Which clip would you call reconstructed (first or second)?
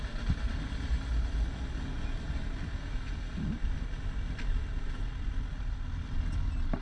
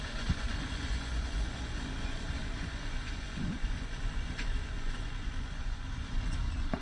second